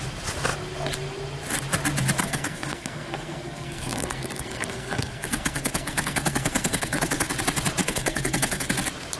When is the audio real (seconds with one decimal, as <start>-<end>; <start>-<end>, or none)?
0.0-2.2; 7.3-7.8; 8.7-9.2